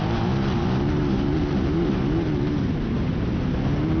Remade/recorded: recorded